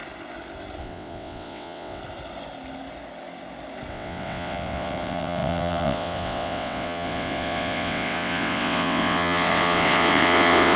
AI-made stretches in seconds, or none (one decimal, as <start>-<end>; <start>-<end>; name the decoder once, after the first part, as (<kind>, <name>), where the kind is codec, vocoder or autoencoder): 0.8-2.0 (vocoder, WaveNeXt); 3.9-10.8